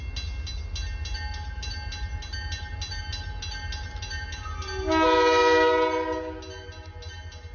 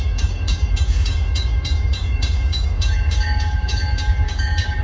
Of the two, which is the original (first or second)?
first